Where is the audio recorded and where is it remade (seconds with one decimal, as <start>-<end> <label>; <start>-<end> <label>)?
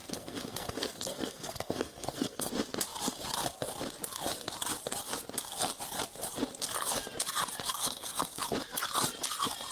0.0-2.5 remade; 2.5-7.7 recorded; 7.7-8.4 remade; 8.4-9.7 recorded